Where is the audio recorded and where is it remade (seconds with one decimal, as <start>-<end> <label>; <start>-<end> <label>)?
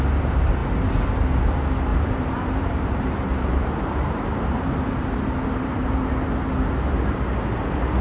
0.0-1.9 recorded; 1.9-6.1 remade; 6.1-8.0 recorded